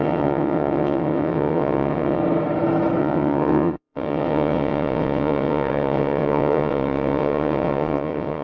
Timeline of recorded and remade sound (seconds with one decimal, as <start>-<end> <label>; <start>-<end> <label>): 0.0-2.2 remade; 2.2-3.0 recorded; 3.0-8.4 remade